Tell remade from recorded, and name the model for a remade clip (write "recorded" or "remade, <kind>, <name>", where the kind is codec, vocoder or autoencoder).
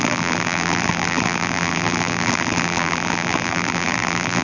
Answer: remade, vocoder, BigVGAN v2